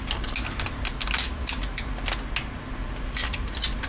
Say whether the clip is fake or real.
real